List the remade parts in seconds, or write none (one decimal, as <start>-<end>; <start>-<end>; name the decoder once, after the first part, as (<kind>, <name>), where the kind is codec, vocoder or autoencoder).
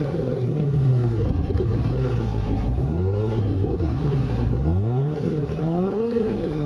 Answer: 0.0-6.7 (codec, SNAC)